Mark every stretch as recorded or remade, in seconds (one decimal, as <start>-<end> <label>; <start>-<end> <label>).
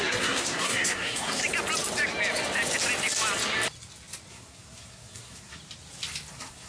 0.0-1.4 remade; 1.4-4.3 recorded; 4.3-5.6 remade; 5.6-6.3 recorded; 6.3-6.7 remade